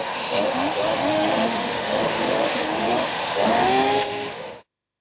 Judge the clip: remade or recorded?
remade